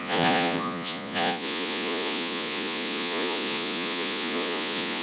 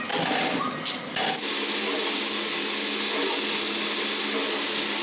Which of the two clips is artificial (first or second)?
first